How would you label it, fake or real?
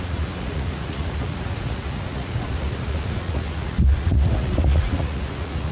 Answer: fake